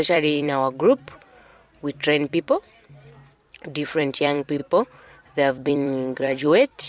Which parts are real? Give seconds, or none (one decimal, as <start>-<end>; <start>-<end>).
1.5-3.5